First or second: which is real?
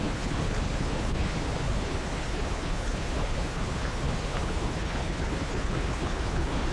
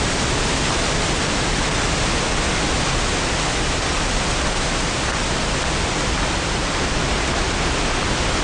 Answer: second